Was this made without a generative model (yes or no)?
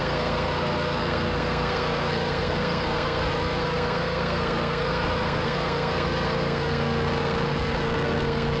no